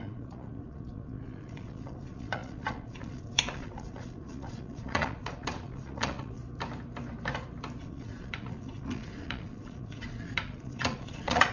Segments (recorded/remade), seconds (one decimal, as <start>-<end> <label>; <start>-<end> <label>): 0.0-6.4 remade; 6.4-7.8 recorded; 7.8-11.5 remade